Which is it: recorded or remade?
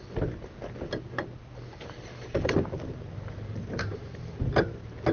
recorded